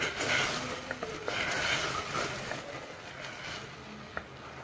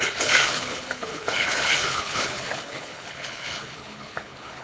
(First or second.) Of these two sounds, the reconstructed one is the second